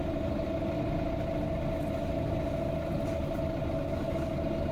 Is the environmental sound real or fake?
real